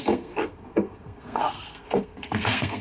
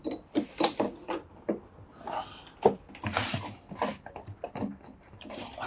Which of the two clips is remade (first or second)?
first